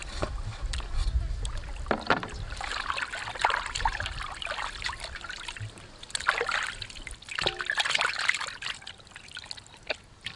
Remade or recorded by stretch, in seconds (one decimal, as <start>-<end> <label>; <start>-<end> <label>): 0.0-10.4 recorded